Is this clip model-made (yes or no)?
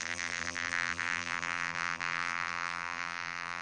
yes